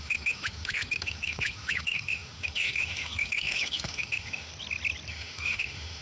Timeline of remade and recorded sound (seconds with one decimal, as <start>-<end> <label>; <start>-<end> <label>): 0.0-4.5 remade; 4.5-5.1 recorded; 5.1-6.0 remade

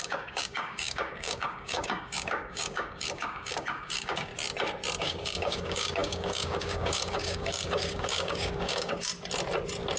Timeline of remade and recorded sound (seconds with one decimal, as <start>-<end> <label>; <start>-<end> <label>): 0.0-4.3 remade; 4.3-5.0 recorded; 5.0-9.1 remade; 9.1-10.0 recorded